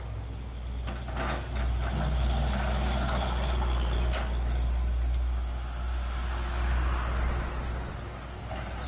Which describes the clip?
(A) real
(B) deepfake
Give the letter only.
A